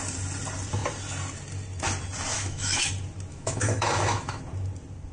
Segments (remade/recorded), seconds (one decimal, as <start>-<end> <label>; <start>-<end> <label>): 0.0-2.3 recorded; 2.3-2.9 remade; 2.9-3.3 recorded; 3.3-4.4 remade; 4.4-5.1 recorded